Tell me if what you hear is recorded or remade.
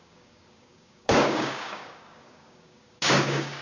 remade